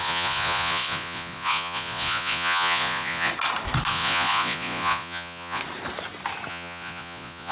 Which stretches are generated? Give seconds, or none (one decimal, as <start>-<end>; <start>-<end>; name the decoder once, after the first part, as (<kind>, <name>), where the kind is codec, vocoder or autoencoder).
0.0-3.3 (vocoder, Vocos); 3.9-5.6; 6.5-7.5